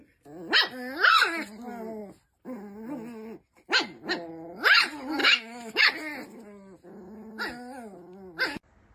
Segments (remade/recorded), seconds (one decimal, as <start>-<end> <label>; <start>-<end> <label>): 0.0-5.2 recorded; 5.2-5.9 remade; 5.9-8.9 recorded